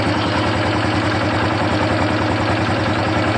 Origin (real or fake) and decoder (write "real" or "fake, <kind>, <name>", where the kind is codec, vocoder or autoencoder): real